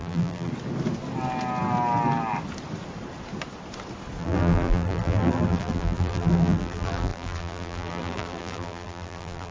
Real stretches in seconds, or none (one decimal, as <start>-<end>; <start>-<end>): 0.5-4.2